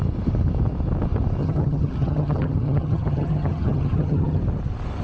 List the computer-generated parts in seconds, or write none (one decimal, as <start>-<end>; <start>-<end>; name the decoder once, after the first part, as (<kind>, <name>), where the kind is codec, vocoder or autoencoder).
1.4-4.4 (vocoder, HiFi-GAN)